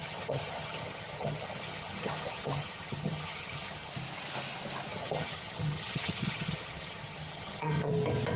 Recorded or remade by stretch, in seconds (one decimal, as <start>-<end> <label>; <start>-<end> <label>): 0.0-3.9 remade; 3.9-4.9 recorded; 4.9-7.9 remade; 7.9-8.4 recorded